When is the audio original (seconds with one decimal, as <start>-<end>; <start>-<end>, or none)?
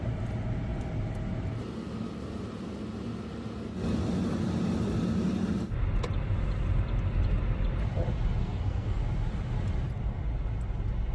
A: 0.0-8.4; 9.0-11.1